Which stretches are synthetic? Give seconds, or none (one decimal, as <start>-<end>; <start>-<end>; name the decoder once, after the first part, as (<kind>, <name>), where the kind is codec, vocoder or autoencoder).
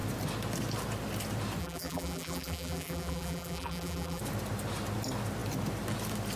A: 1.6-4.2 (vocoder, BigVGAN v2)